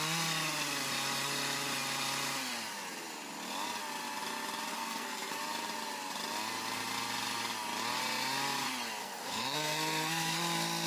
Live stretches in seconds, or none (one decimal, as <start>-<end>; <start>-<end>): 0.0-4.7; 5.4-9.0; 10.4-10.9